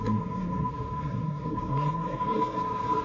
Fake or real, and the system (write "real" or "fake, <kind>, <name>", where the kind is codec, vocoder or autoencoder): fake, codec, SNAC